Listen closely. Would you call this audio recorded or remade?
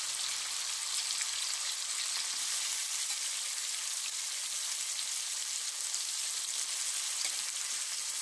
recorded